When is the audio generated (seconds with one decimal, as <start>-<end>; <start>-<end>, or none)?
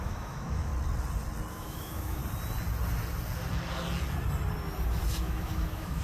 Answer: 0.0-0.7; 1.5-2.2; 5.2-6.0